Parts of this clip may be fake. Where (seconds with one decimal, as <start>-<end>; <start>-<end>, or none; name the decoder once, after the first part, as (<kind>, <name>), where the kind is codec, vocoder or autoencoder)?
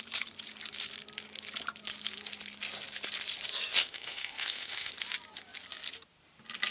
3.8-4.9 (autoencoder, DAC-VAE)